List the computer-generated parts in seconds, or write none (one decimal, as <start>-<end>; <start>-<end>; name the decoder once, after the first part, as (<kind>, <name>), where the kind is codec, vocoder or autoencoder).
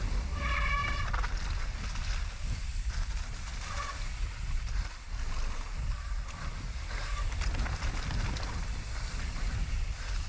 none